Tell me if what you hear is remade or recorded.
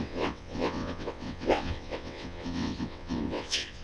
remade